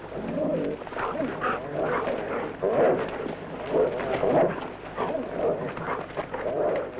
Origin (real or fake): real